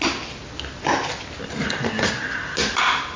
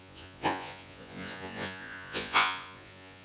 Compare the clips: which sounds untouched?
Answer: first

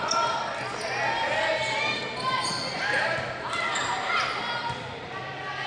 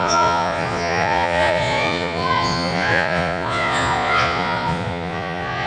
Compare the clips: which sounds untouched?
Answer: first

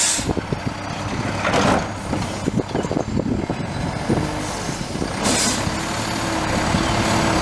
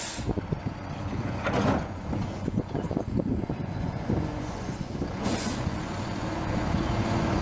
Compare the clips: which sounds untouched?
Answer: first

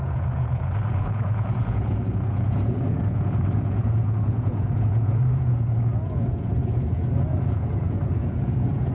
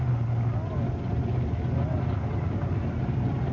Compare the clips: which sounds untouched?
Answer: second